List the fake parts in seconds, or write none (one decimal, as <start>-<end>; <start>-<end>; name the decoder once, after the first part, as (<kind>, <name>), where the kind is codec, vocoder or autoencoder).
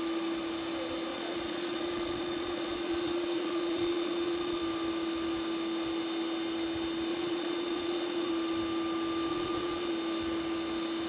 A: 1.1-4.6 (vocoder, Vocos); 7.1-8.3; 9.3-9.9